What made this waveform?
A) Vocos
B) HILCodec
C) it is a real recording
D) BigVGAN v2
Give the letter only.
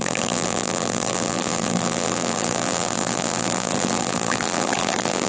D